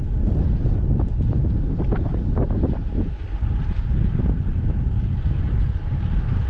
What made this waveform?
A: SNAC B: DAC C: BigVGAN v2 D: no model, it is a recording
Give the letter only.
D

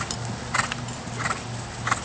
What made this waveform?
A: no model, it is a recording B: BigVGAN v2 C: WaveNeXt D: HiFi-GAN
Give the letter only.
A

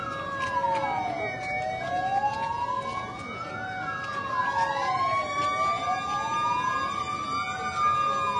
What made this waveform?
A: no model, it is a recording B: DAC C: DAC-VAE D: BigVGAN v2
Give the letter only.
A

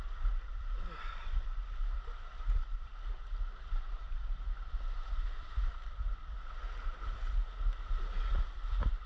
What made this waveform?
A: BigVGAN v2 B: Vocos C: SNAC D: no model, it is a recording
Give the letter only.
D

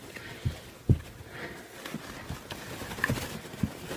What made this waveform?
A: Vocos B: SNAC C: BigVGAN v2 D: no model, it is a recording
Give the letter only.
D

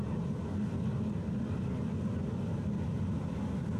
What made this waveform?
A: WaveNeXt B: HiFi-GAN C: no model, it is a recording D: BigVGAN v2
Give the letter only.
C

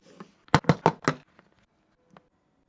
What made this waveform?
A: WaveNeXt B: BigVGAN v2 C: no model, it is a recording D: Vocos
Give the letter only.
C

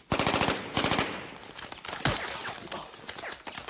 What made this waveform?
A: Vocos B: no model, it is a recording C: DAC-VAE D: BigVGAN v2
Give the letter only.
B